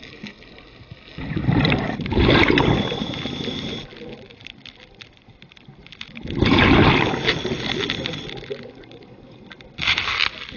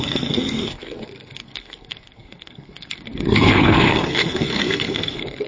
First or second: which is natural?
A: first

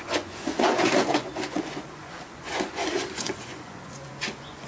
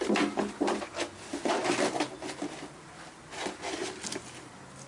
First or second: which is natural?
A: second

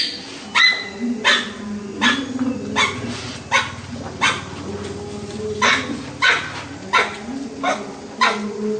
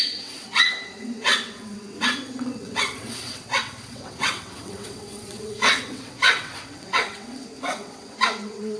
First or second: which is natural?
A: first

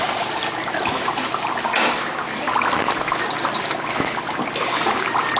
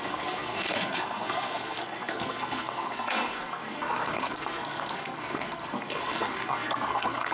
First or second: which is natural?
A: first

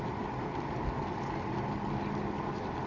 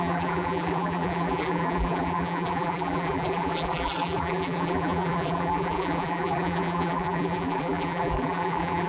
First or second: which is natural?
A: first